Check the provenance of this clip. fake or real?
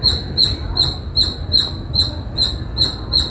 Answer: real